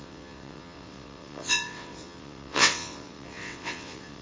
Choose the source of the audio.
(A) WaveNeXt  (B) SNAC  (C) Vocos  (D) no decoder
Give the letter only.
A